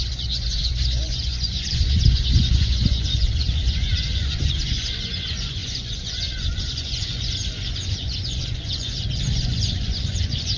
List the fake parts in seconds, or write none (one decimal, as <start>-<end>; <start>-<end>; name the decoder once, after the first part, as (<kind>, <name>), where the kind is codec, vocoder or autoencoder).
0.0-10.6 (vocoder, Vocos)